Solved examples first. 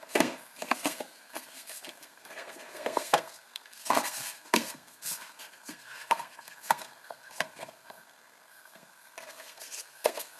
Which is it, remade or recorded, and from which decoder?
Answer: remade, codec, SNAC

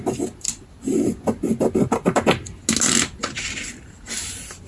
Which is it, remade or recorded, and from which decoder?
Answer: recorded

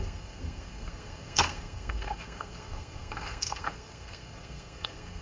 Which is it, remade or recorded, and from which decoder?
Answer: remade, codec, SNAC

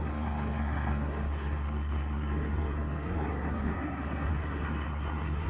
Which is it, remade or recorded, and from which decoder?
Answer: remade, codec, SNAC